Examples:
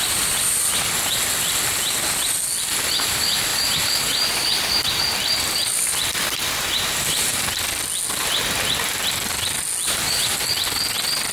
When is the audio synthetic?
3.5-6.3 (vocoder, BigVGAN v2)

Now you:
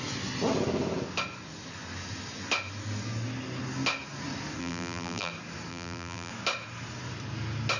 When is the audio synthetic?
4.6-5.3 (vocoder, BigVGAN v2); 5.7-6.3

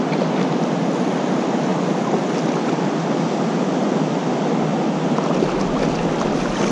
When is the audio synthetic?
1.7-2.7 (vocoder, BigVGAN v2)

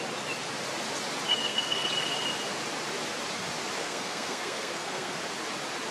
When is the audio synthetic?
1.3-1.9 (codec, SNAC); 3.8-5.2